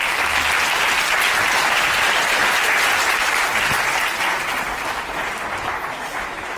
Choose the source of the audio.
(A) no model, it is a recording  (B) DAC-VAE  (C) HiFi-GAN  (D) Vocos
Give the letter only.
A